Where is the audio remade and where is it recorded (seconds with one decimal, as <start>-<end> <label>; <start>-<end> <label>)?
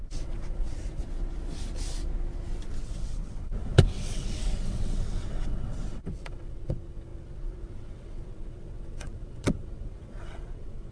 0.0-1.0 remade; 1.0-2.8 recorded; 2.8-10.9 remade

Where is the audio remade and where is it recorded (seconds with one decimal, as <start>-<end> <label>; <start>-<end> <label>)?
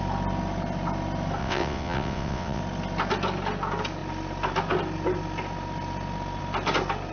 0.0-1.4 recorded; 1.4-2.6 remade; 2.6-7.1 recorded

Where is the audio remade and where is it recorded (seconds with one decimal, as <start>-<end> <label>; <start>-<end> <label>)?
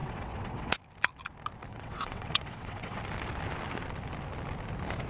0.0-0.8 remade; 0.8-1.7 recorded; 1.7-3.0 remade; 3.0-5.1 recorded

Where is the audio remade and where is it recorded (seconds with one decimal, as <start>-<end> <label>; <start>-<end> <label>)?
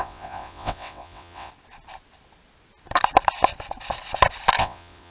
0.0-1.5 remade; 1.5-4.6 recorded; 4.6-5.1 remade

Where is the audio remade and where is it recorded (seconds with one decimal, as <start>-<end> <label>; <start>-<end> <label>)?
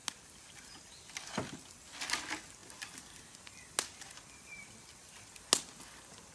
0.0-6.3 recorded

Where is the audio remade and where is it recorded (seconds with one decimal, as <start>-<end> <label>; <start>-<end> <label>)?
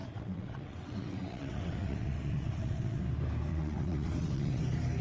0.0-3.0 remade; 3.0-3.5 recorded; 3.5-4.6 remade; 4.6-5.0 recorded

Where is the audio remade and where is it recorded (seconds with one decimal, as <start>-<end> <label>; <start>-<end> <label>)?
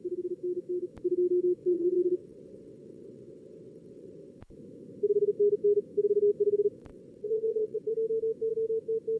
0.0-1.6 recorded; 1.6-4.3 remade; 4.3-6.9 recorded; 6.9-7.9 remade; 7.9-9.2 recorded